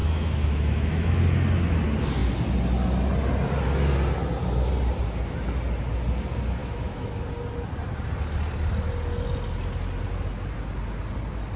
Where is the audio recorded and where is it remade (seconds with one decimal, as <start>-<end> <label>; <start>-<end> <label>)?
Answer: 0.0-1.2 remade; 1.2-6.6 recorded; 6.6-7.2 remade; 7.2-11.6 recorded